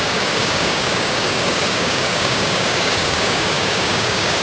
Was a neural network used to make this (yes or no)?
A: yes